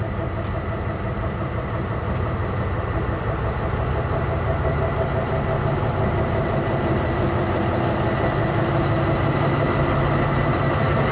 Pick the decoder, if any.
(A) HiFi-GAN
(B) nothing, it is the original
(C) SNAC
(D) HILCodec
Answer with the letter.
B